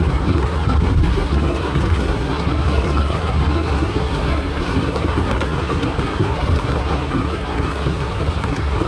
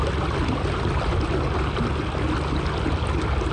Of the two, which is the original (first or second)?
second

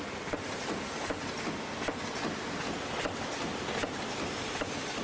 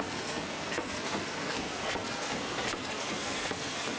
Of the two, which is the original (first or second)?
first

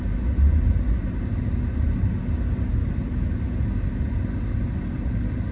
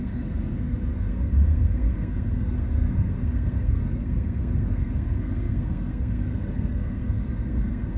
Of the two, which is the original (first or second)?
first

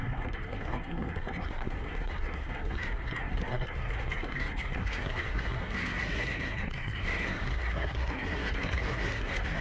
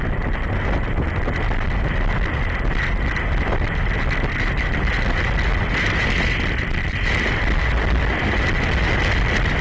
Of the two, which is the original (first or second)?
second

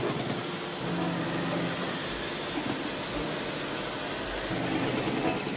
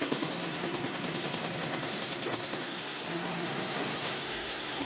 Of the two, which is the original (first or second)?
first